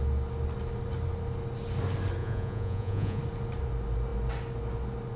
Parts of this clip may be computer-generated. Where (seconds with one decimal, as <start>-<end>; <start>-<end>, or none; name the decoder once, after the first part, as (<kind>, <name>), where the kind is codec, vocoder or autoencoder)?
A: 2.2-3.2 (vocoder, Vocos)